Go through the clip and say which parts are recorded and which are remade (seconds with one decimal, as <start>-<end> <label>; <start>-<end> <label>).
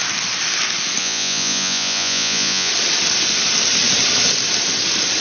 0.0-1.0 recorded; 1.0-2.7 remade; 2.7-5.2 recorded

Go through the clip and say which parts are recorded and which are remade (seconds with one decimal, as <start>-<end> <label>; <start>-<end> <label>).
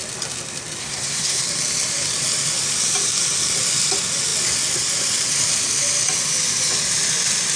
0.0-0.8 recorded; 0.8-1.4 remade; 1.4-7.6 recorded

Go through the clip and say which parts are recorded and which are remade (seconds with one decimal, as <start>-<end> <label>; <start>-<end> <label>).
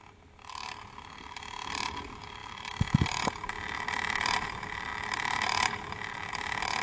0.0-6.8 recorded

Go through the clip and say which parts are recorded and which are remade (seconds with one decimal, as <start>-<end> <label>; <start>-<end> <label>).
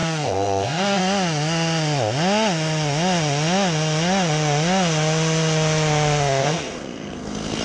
0.0-1.0 remade; 1.0-6.4 recorded; 6.4-7.6 remade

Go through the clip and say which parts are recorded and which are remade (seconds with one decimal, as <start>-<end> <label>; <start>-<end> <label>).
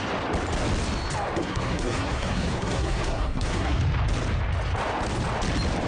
0.0-1.4 recorded; 1.4-3.8 remade; 3.8-5.9 recorded